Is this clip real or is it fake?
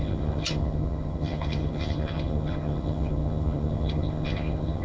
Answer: fake